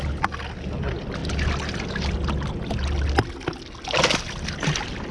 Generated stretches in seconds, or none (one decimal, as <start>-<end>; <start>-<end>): none